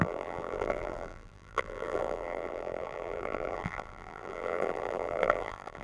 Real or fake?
fake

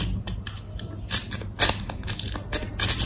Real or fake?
real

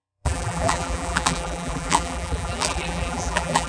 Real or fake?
fake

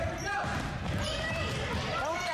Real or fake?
fake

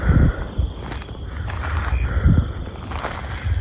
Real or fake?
fake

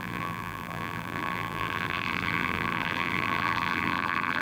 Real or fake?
fake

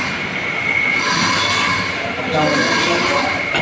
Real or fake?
fake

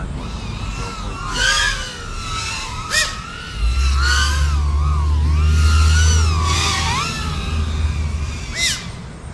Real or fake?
real